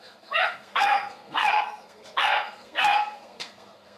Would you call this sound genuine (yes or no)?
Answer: no